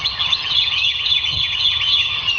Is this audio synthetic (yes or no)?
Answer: yes